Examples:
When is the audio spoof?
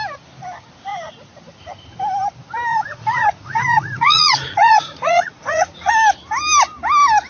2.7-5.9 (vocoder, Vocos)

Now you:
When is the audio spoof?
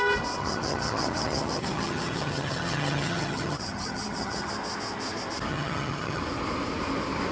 0.4-4.5 (vocoder, HiFi-GAN); 5.5-6.2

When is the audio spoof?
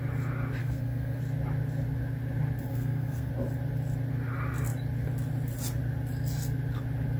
0.6-1.2 (codec, SNAC); 2.7-3.3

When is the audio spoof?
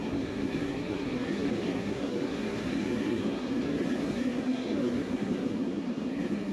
0.0-6.5 (codec, SNAC)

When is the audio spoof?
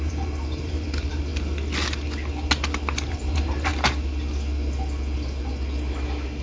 0.0-1.3 (vocoder, BigVGAN v2); 3.1-3.7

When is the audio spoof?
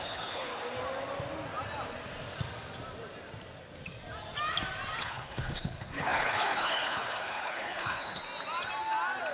0.0-0.5 (codec, HILCodec); 5.0-8.2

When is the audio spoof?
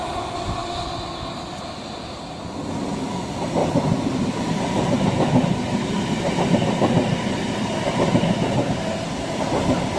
3.6-8.7 (vocoder, BigVGAN v2)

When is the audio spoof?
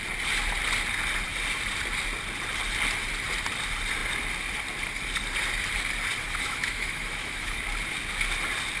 6.2-7.6 (autoencoder, DAC-VAE)